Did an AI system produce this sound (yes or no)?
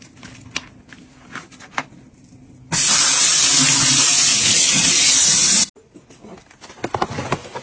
no